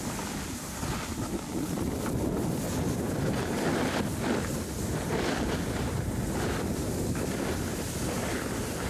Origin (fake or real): real